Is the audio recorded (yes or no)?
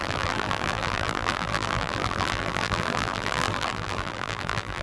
no